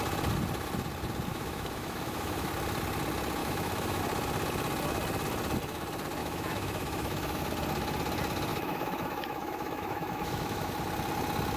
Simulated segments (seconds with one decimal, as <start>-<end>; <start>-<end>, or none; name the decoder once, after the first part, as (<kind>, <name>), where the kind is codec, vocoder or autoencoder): 1.3-2.5 (autoencoder, DAC-VAE); 3.4-4.0; 6.2-7.4; 8.5-10.7